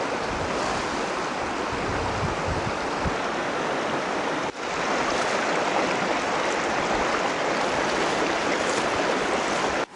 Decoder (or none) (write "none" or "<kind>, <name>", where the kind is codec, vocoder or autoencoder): none